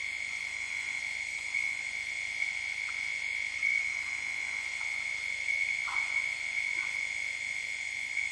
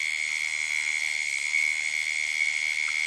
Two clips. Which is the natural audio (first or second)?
second